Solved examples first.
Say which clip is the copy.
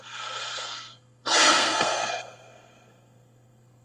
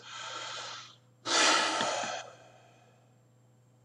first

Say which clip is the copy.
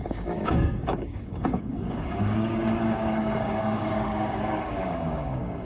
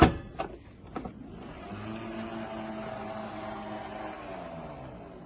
first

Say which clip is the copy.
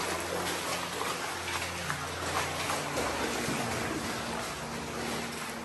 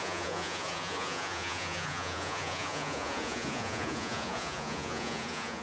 second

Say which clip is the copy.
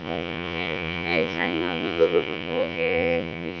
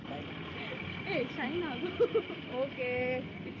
first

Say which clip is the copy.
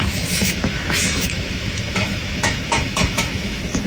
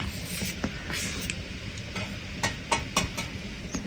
first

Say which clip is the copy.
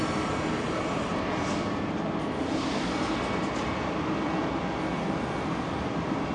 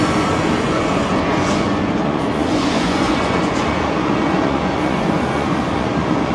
second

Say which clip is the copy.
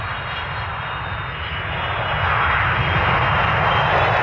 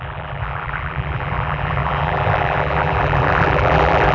second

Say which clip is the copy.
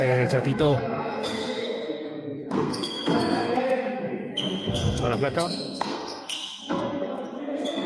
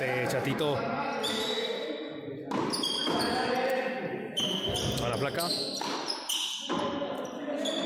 first